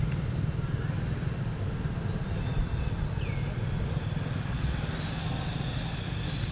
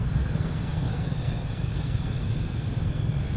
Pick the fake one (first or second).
second